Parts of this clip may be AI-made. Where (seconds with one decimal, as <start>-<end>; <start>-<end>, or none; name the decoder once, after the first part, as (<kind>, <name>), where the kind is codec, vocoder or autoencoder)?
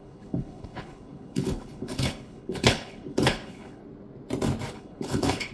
0.0-3.8 (codec, HILCodec); 4.7-5.5